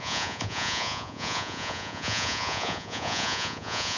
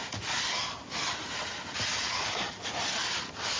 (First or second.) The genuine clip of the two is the second